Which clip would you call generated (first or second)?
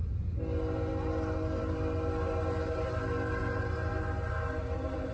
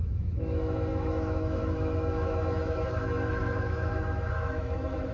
second